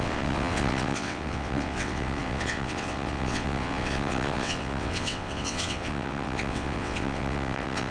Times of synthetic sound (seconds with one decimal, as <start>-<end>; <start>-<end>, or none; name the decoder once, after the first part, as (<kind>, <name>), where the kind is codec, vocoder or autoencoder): 0.0-7.9 (vocoder, WaveNeXt)